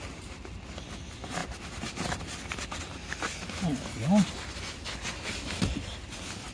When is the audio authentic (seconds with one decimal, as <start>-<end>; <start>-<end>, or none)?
0.0-6.5